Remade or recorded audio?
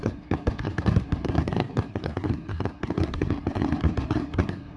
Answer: remade